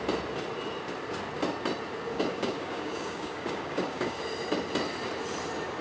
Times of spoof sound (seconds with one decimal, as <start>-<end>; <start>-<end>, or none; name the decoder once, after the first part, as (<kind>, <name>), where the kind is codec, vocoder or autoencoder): 2.1-4.2 (codec, DAC)